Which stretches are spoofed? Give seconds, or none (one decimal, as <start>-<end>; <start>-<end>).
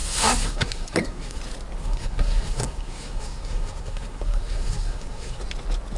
0.0-1.4; 1.8-5.4